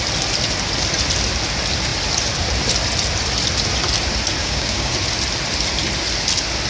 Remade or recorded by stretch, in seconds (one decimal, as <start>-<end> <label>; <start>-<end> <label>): 0.0-4.4 recorded; 4.4-4.9 remade; 4.9-6.7 recorded